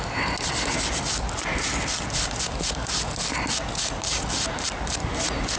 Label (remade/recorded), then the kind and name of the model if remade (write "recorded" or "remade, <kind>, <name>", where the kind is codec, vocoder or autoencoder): recorded